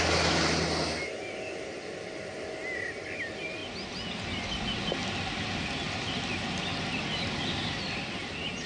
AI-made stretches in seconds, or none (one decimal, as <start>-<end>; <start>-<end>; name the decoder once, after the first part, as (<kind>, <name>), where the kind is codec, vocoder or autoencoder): none